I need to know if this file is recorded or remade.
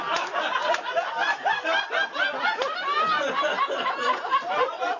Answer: recorded